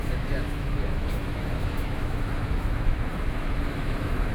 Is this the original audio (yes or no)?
no